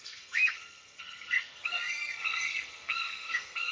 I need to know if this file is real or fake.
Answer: fake